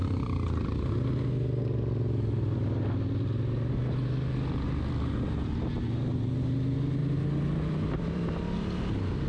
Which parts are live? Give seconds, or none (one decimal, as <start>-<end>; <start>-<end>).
0.9-7.0; 8.3-9.3